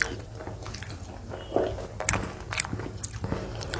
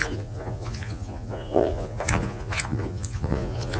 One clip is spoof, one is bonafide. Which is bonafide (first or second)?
first